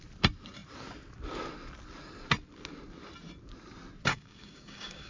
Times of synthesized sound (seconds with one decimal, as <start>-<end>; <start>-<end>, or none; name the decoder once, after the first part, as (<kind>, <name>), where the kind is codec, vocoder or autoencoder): 4.1-5.1 (codec, DAC)